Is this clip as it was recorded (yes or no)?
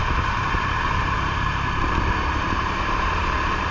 no